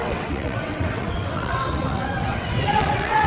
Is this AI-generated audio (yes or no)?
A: yes